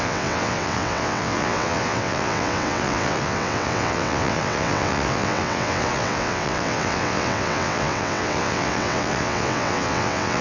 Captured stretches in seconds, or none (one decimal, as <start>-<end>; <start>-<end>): none